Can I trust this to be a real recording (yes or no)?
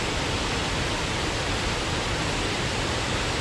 yes